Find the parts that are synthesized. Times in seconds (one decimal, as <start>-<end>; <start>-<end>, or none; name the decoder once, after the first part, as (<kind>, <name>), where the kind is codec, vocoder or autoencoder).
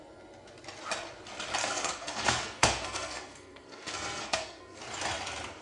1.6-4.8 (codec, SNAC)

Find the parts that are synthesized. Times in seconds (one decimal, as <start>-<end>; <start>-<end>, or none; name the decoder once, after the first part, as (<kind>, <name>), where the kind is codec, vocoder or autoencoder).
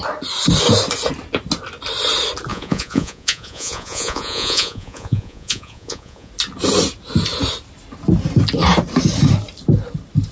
2.5-6.3 (vocoder, Vocos)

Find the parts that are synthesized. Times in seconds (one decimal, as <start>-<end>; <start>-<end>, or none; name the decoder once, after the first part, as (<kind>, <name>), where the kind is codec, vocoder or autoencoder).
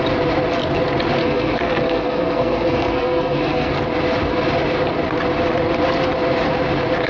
1.2-3.7 (codec, SNAC)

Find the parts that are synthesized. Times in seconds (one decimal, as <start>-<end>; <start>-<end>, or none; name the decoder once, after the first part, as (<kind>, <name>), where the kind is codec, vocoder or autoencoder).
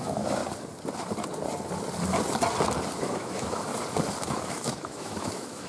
0.0-0.4 (autoencoder, DAC-VAE); 3.0-3.7; 4.2-5.7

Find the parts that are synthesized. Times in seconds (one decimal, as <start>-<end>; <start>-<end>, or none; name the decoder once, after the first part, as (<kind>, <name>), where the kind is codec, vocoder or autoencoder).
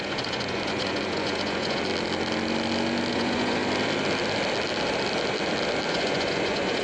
0.0-1.9 (vocoder, Vocos); 3.1-3.6; 5.9-6.8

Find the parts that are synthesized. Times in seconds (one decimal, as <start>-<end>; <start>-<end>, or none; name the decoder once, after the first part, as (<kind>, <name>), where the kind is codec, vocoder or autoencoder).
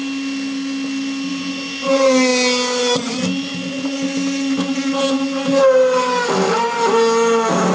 none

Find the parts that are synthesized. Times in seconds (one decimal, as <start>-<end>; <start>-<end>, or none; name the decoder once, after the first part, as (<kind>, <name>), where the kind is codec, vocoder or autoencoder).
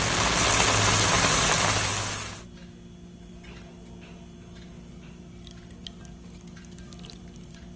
none